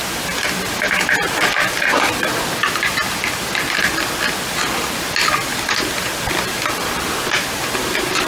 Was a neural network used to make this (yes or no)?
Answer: yes